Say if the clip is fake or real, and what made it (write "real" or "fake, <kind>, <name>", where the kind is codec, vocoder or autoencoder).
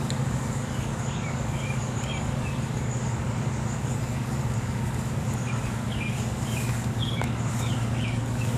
fake, codec, DAC